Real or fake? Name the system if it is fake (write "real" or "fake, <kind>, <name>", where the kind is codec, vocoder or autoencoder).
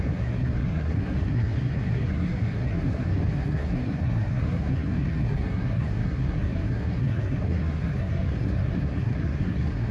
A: fake, codec, SNAC